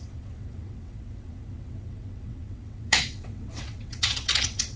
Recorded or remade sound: remade